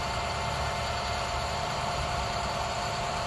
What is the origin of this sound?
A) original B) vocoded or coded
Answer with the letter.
B